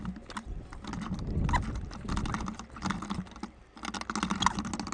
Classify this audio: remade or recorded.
recorded